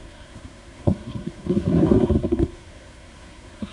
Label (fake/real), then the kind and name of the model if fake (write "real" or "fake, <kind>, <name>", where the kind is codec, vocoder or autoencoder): fake, codec, SNAC